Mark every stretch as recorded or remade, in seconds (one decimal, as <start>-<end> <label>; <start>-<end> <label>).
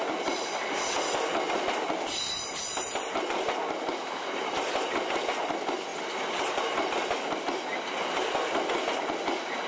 0.0-9.7 recorded